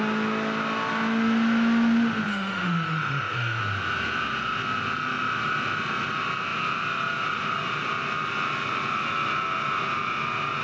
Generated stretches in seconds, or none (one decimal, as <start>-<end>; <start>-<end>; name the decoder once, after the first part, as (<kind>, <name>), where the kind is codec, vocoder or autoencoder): 2.3-3.6 (autoencoder, DAC-VAE)